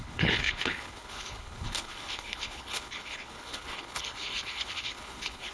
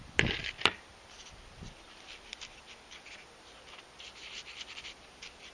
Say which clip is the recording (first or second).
second